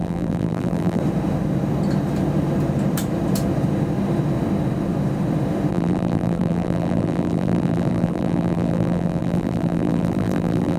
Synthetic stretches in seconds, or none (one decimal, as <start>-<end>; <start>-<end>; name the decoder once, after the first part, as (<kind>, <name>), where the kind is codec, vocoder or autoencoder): 0.0-1.0 (vocoder, BigVGAN v2); 5.7-10.8